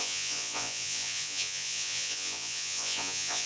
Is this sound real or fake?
fake